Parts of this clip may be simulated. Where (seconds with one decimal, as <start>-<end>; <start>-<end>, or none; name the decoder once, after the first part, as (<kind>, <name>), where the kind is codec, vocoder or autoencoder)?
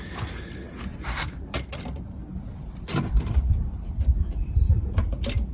0.9-4.0 (vocoder, BigVGAN v2)